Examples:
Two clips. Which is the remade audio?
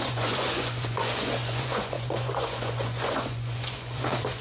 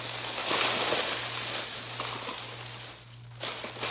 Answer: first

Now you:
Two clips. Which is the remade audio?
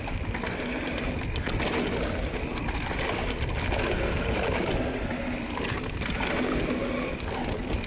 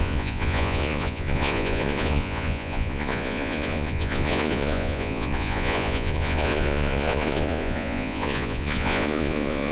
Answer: second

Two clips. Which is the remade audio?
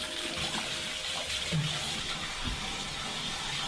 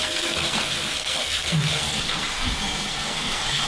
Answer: second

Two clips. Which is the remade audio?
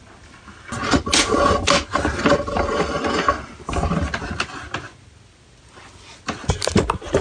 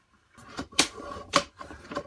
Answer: second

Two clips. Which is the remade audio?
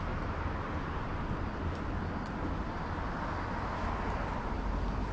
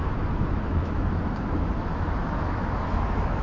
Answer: second